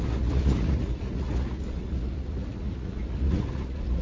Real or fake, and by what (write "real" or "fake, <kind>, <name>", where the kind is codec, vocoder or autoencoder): fake, vocoder, Vocos